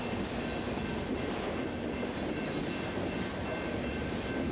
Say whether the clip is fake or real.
real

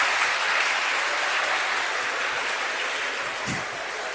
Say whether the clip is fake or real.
real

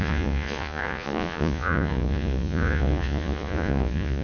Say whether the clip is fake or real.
fake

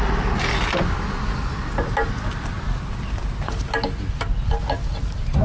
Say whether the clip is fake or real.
real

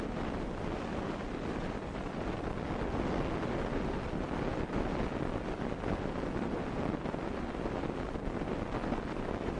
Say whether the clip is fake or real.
real